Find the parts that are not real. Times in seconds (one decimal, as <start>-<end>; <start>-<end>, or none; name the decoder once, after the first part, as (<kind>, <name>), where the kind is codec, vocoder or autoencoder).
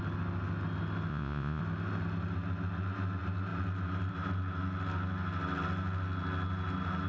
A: 1.1-1.6 (vocoder, Vocos)